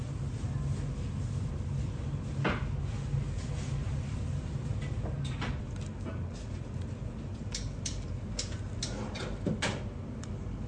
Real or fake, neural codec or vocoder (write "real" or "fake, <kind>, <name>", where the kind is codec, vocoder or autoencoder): real